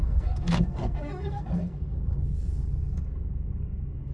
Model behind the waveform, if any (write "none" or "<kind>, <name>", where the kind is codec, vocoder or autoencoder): codec, SNAC